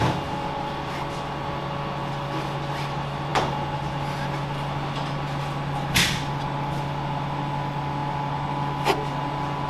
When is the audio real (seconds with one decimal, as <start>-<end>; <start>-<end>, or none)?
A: 0.0-9.7